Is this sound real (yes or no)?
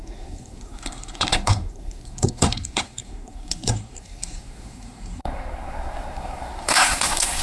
no